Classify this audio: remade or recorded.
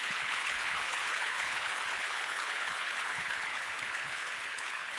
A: remade